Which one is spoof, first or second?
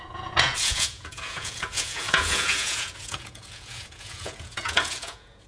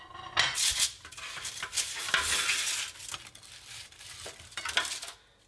first